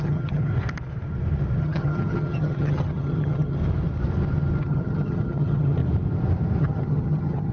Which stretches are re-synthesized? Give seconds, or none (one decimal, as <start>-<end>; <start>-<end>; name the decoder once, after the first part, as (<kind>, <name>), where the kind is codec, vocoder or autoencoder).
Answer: 0.0-0.5 (vocoder, HiFi-GAN); 1.6-3.6; 4.6-5.8; 6.6-7.5